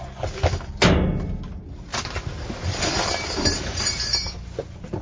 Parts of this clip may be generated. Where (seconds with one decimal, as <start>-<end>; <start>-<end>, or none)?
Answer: none